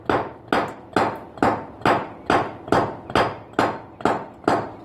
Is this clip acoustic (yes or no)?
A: yes